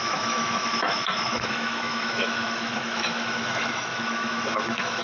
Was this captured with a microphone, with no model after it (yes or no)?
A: no